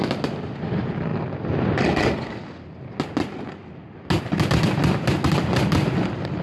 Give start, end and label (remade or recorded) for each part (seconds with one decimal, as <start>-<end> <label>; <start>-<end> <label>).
0.0-6.4 recorded